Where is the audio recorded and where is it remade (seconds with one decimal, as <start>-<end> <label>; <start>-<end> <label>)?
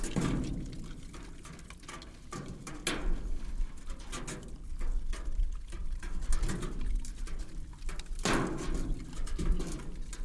0.0-10.2 recorded